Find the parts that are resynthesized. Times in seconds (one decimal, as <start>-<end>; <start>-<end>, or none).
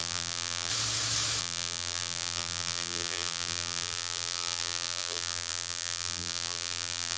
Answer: 0.0-0.7; 1.4-7.2